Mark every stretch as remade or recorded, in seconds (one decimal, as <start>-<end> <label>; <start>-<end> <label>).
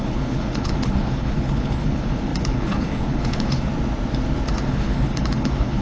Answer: 0.0-3.7 remade; 3.7-4.7 recorded; 4.7-5.8 remade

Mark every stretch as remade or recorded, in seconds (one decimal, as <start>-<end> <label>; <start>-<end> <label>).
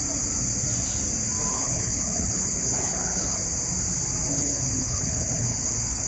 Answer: 0.0-1.5 recorded; 1.5-3.4 remade; 3.4-4.3 recorded; 4.3-6.1 remade